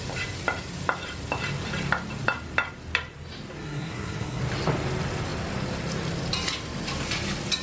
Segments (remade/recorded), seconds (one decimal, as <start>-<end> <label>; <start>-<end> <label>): 0.0-3.6 recorded; 3.6-4.4 remade; 4.4-7.6 recorded